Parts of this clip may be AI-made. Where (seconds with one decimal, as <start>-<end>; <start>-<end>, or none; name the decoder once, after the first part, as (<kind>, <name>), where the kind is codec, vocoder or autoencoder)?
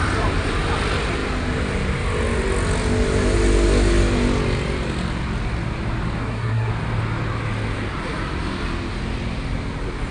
6.2-6.7 (codec, SNAC)